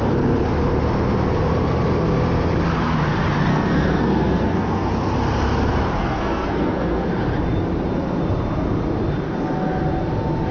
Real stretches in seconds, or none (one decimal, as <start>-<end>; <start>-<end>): 0.0-3.5; 4.9-6.0; 7.1-10.5